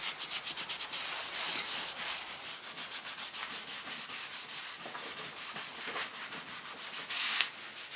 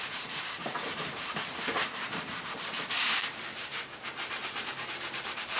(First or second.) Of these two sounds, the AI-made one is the second